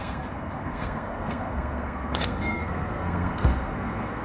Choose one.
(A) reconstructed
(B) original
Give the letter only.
A